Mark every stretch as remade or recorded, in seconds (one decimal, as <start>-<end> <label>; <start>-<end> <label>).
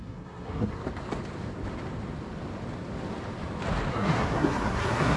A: 0.0-0.8 remade; 0.8-3.9 recorded; 3.9-5.2 remade